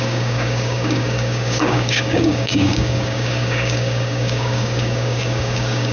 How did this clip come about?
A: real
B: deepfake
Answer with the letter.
B